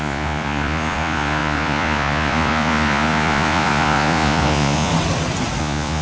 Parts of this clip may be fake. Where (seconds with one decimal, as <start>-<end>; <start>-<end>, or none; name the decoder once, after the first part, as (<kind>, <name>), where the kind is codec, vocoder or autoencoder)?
0.0-4.9 (vocoder, Vocos); 5.6-6.0